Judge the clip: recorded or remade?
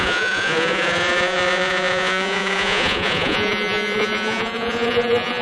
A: remade